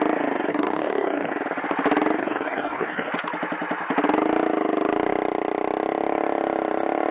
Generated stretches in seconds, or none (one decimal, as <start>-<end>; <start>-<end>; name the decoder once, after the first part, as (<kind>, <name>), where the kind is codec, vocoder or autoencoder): 0.5-1.3 (codec, DAC); 2.2-3.1